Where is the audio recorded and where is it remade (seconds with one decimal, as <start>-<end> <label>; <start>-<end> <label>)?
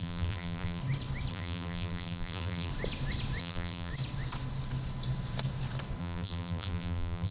0.0-0.8 remade; 0.8-1.3 recorded; 1.3-2.7 remade; 2.7-3.4 recorded; 3.4-3.9 remade; 3.9-6.0 recorded; 6.0-7.3 remade